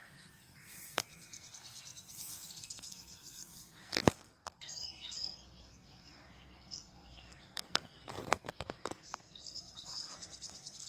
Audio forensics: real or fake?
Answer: fake